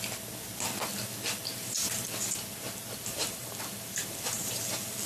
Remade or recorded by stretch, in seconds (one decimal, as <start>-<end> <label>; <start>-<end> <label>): 0.0-1.5 recorded; 1.5-4.6 remade; 4.6-5.1 recorded